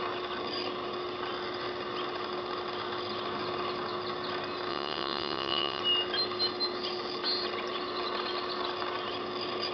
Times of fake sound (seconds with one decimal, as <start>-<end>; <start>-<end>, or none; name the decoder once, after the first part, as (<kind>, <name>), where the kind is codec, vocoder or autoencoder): 4.7-5.8 (vocoder, WaveNeXt)